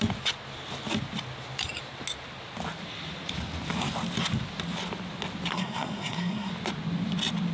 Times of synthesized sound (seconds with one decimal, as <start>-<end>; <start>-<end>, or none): 5.5-6.5